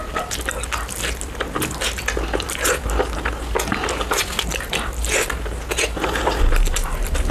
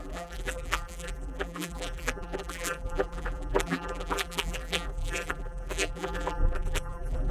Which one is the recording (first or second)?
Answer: first